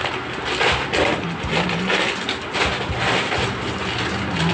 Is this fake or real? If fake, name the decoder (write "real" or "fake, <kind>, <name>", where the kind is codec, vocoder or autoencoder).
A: real